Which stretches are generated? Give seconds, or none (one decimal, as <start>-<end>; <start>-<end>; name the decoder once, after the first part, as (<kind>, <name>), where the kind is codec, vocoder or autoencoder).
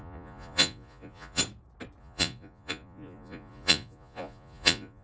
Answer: 0.0-1.4 (vocoder, Vocos); 2.0-5.0